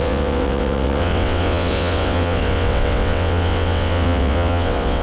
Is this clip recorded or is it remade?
remade